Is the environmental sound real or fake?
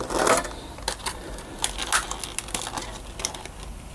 real